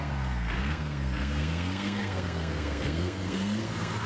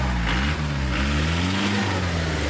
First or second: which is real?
second